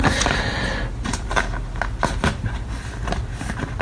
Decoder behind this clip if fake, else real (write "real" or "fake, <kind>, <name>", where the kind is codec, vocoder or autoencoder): real